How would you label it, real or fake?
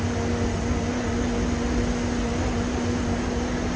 real